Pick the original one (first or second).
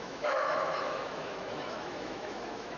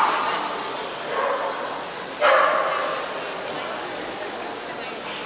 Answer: second